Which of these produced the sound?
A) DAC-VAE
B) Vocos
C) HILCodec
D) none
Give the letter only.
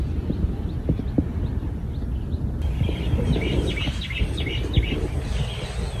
D